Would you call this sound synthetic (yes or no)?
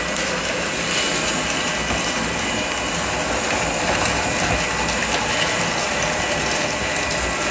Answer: no